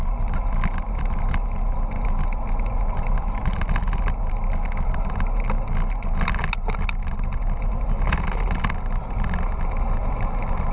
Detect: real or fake real